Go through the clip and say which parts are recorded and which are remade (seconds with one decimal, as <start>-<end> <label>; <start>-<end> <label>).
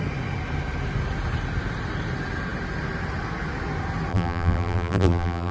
0.0-4.1 recorded; 4.1-5.5 remade